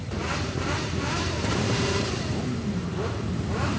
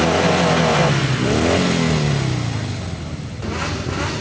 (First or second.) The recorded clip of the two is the second